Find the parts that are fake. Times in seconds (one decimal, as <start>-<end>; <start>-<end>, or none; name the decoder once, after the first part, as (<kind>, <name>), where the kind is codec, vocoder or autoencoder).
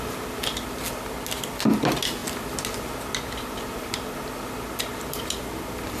none